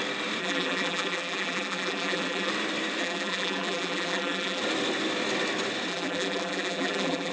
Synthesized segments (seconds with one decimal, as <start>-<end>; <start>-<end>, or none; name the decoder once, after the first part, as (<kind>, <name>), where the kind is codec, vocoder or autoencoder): 0.4-2.5 (vocoder, BigVGAN v2); 3.0-4.6; 5.9-7.3